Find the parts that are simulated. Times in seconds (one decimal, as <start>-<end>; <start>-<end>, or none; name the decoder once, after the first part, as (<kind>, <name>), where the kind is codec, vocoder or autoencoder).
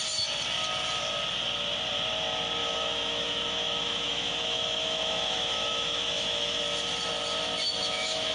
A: 2.6-6.6 (autoencoder, DAC-VAE); 7.7-8.3